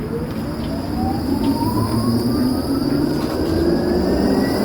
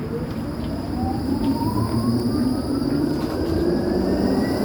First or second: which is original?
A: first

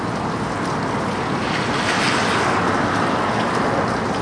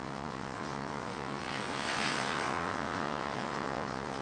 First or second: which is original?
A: first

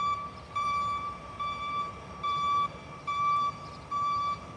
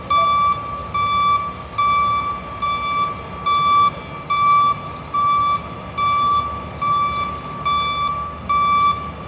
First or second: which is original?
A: second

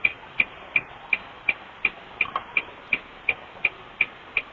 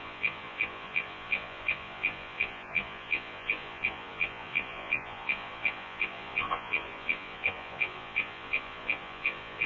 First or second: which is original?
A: first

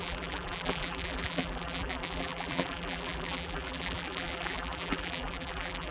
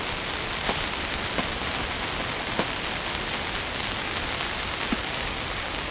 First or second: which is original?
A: second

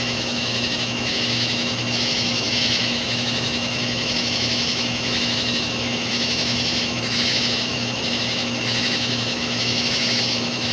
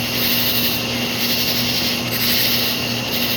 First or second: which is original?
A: second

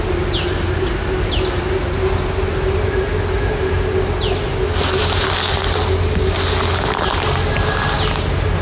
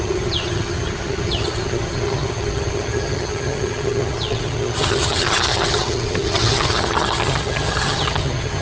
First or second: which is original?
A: first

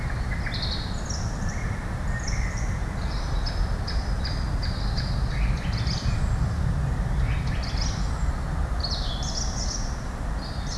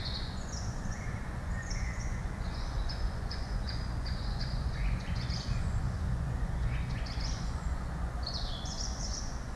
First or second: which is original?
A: first